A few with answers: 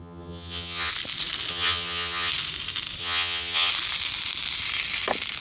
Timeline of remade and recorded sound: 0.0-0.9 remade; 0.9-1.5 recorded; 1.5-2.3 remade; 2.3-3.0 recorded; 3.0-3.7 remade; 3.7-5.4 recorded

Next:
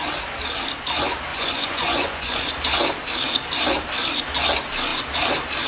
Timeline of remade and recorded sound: 0.0-1.3 recorded; 1.3-2.5 remade; 2.5-5.7 recorded

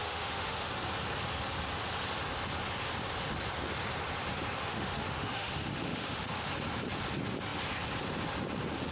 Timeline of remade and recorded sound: 0.0-0.7 remade; 0.7-4.6 recorded; 4.6-6.5 remade; 6.5-8.9 recorded

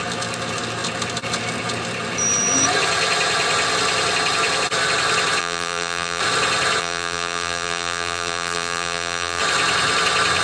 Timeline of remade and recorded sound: 0.0-5.4 recorded; 5.4-6.2 remade; 6.2-6.8 recorded; 6.8-9.4 remade; 9.4-10.4 recorded

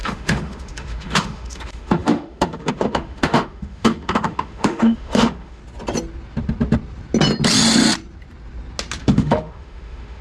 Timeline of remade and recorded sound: 0.0-5.6 remade; 5.6-9.0 recorded; 9.0-10.2 remade

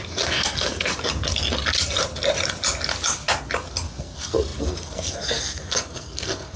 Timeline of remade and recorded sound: 0.0-0.9 remade; 0.9-4.0 recorded; 4.0-6.6 remade